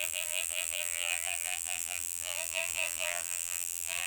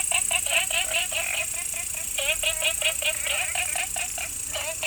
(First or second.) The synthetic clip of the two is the first